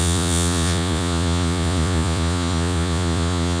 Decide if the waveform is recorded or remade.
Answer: remade